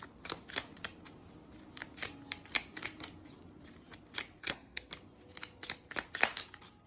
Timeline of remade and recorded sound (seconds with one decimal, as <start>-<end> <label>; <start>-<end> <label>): 0.0-4.4 recorded; 4.4-4.9 remade; 4.9-6.9 recorded